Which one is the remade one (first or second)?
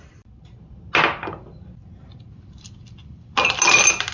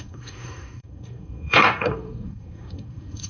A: second